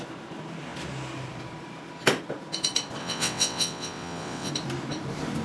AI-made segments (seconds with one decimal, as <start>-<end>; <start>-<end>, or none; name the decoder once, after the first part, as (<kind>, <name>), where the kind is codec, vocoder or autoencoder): 3.0-4.5 (vocoder, WaveNeXt)